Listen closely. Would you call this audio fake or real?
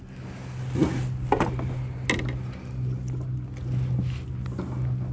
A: real